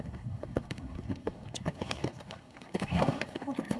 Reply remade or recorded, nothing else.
remade